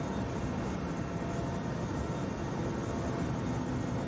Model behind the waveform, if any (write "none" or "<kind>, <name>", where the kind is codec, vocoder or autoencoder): none